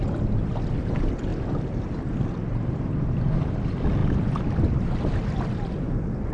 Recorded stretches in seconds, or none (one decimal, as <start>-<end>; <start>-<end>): 0.0-1.3; 2.9-4.0; 5.4-6.3